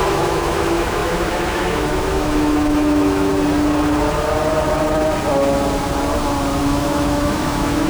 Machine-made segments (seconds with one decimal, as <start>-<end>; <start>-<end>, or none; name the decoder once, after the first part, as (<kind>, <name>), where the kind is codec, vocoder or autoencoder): 0.0-3.3 (autoencoder, DAC-VAE); 6.6-7.9